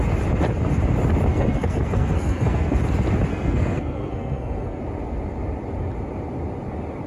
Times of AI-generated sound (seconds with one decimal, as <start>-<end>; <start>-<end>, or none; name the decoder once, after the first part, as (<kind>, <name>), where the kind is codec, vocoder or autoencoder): 1.3-2.8 (codec, SNAC); 3.3-4.8